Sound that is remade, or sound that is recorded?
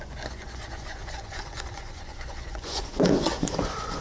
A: remade